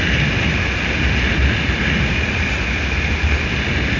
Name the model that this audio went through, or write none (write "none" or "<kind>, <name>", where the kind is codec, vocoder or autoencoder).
none